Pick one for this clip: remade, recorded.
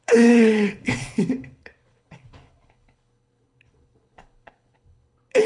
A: remade